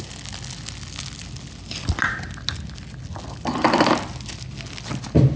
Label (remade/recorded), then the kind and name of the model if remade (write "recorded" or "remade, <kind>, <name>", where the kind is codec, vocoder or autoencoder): recorded